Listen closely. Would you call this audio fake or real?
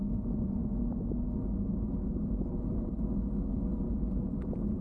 real